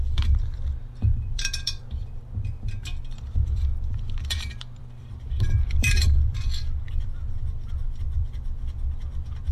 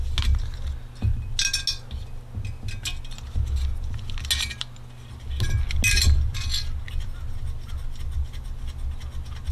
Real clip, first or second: second